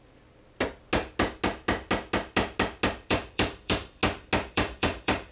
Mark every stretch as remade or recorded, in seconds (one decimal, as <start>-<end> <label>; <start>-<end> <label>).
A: 0.0-3.1 recorded; 3.1-4.0 remade; 4.0-4.5 recorded; 4.5-5.3 remade